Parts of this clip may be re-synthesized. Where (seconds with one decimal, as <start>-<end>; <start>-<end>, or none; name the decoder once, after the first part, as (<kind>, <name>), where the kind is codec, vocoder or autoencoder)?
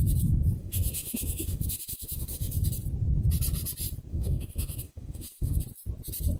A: 0.6-2.6 (autoencoder, DAC-VAE); 4.1-5.6